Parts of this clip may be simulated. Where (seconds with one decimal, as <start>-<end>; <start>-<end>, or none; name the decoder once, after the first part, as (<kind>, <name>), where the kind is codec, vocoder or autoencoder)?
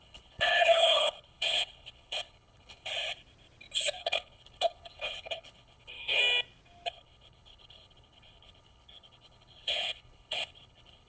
0.0-2.9 (codec, HILCodec); 4.0-6.2; 6.9-11.1